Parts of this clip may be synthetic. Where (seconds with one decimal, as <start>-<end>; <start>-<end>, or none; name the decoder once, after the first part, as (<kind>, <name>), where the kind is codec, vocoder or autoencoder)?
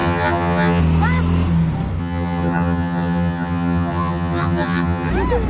0.0-0.8 (vocoder, HiFi-GAN); 2.0-5.1